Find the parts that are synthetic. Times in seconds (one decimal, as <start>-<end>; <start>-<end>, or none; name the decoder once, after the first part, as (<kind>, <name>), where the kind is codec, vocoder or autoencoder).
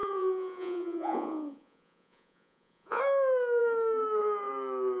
0.0-3.0 (vocoder, Vocos)